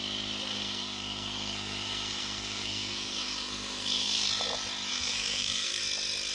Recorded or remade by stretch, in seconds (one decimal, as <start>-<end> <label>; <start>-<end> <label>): 0.0-0.5 recorded; 0.5-4.3 remade; 4.3-4.9 recorded; 4.9-5.8 remade; 5.8-6.3 recorded